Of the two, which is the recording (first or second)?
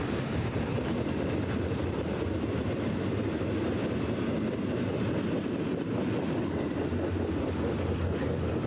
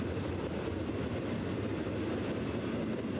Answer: second